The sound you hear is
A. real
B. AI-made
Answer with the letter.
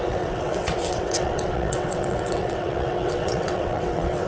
B